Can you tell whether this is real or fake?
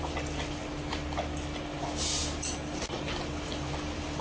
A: real